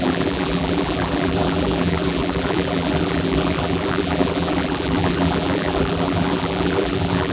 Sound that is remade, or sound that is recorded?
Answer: remade